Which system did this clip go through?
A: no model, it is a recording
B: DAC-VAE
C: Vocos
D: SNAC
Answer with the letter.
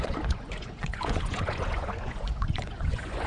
C